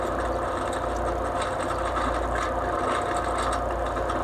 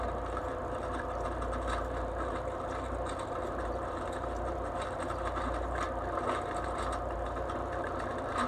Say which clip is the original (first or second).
first